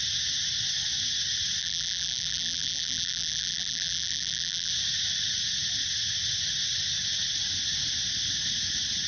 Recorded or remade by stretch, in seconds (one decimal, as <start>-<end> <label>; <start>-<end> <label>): 0.0-1.6 recorded; 1.6-4.7 remade; 4.7-9.1 recorded